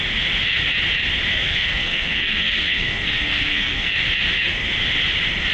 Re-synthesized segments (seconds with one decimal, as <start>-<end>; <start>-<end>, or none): 1.3-3.9